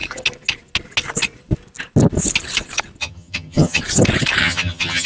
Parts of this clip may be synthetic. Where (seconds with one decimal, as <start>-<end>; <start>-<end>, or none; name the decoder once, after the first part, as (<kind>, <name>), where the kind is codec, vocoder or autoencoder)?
3.0-3.8 (vocoder, HiFi-GAN); 4.4-5.1

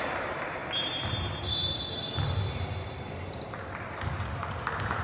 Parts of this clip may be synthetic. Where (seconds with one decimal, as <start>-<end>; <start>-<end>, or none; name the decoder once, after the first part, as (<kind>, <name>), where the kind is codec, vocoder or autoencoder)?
0.0-0.6 (vocoder, BigVGAN v2); 3.0-5.0